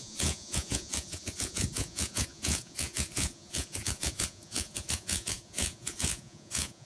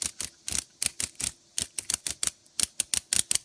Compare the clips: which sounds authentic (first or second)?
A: second